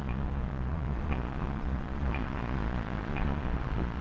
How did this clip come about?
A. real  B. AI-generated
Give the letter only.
B